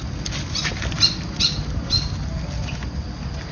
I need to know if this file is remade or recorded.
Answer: recorded